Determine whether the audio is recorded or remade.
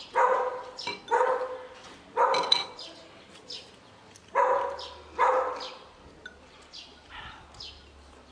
recorded